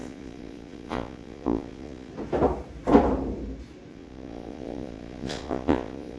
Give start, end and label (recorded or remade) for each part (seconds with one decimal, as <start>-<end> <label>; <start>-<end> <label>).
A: 0.0-2.1 remade; 2.1-3.9 recorded; 3.9-6.2 remade